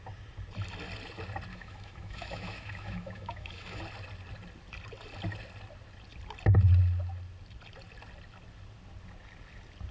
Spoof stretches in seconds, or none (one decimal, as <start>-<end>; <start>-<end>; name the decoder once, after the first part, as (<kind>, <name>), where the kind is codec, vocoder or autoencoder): 1.5-3.8 (autoencoder, DAC-VAE)